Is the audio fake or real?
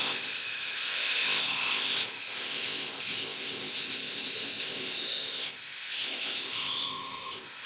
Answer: fake